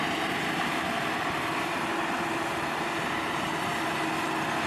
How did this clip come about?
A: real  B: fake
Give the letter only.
A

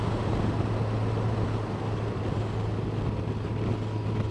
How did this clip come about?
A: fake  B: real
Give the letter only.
B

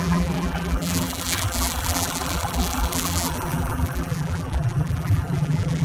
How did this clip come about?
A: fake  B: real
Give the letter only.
A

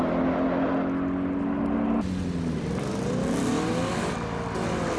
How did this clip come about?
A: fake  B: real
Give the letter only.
B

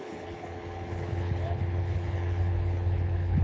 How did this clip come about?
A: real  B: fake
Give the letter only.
B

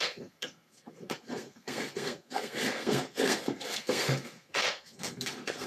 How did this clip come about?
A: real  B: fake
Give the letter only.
B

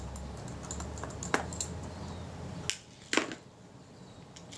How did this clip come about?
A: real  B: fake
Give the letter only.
A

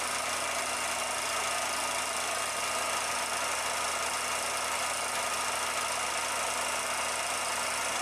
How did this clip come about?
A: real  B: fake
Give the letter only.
A